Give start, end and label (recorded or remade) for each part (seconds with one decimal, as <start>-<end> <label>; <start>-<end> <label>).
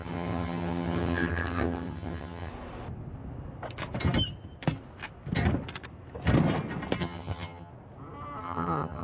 0.0-2.5 remade; 2.5-7.0 recorded; 7.0-7.7 remade; 7.7-8.4 recorded; 8.4-9.0 remade